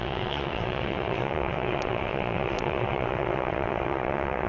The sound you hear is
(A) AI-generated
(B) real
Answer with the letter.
A